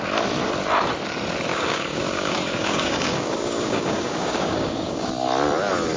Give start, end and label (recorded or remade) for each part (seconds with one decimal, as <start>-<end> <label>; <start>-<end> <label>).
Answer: 0.0-1.5 recorded; 1.5-5.1 remade; 5.1-6.0 recorded